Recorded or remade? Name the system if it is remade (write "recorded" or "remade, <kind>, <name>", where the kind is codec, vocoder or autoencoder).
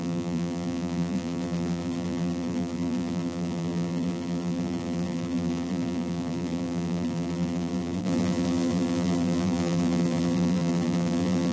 remade, vocoder, BigVGAN v2